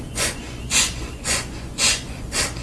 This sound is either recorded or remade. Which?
remade